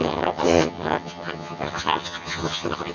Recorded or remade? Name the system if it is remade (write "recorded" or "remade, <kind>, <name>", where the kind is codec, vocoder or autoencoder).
remade, vocoder, HiFi-GAN